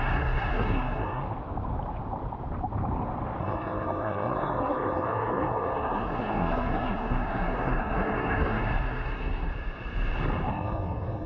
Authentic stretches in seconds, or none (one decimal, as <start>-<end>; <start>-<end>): 1.2-3.4; 9.5-10.5